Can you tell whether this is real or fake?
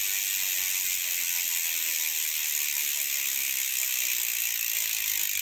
real